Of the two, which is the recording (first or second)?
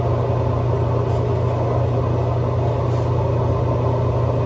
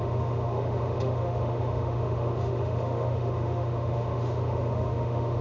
first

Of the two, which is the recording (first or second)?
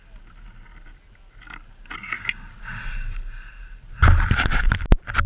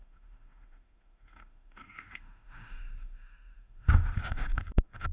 first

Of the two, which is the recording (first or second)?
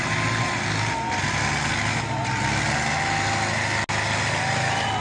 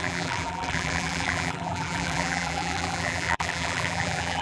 first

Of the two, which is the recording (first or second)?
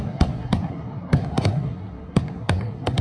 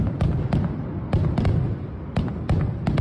second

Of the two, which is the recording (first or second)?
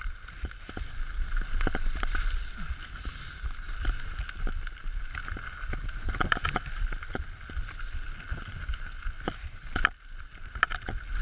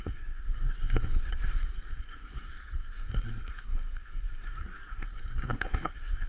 first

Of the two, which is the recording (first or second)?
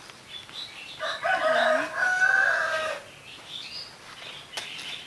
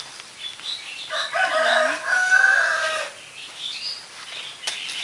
first